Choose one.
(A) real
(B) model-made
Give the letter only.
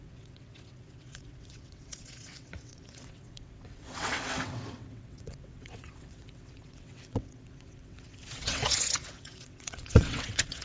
B